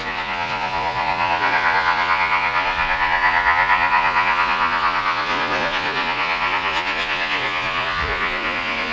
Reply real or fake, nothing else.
fake